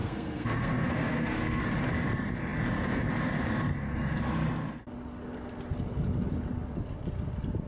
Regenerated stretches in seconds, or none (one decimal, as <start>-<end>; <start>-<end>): 0.0-1.6